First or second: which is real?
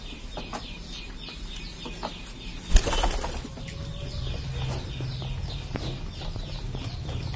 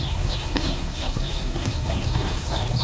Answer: first